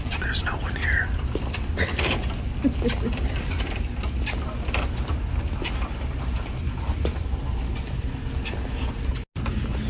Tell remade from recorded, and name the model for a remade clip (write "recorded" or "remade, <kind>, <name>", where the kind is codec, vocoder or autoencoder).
recorded